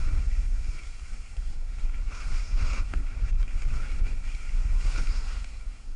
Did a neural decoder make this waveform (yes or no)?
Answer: yes